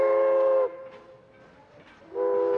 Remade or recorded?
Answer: recorded